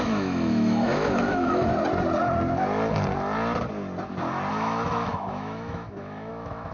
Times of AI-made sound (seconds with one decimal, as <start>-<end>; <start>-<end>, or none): 0.0-1.7; 4.5-6.7

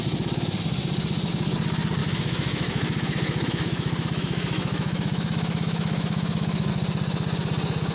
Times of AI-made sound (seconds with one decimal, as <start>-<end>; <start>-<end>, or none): 2.0-6.7